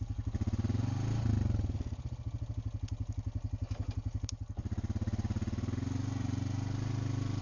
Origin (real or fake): real